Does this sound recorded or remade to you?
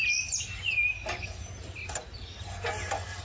recorded